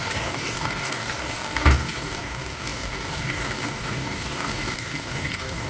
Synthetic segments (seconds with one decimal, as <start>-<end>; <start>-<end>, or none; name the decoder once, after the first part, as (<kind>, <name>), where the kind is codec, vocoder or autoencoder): 0.0-5.7 (codec, DAC)